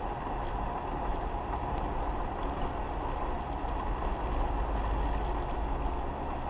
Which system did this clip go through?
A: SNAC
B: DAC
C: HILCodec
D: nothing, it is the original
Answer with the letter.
D